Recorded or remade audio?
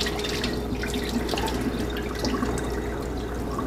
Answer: recorded